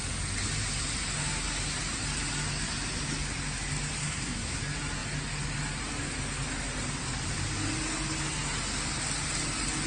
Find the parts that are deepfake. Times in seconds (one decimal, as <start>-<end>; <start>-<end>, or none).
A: 4.0-4.6